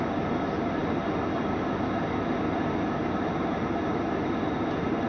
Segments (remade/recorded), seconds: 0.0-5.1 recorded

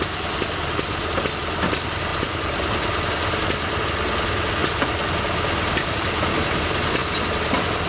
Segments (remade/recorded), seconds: 0.0-7.9 recorded

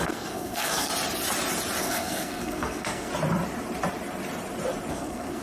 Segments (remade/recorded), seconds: 0.0-0.9 remade; 0.9-1.8 recorded; 1.8-3.1 remade; 3.1-4.9 recorded; 4.9-5.4 remade